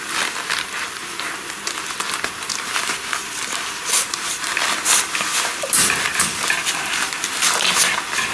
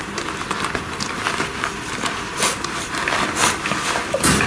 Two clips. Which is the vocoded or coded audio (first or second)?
second